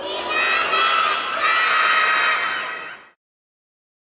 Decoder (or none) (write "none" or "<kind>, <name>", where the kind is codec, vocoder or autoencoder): none